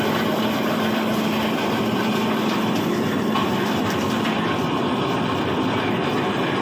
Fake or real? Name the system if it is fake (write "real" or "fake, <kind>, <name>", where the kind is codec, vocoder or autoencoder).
real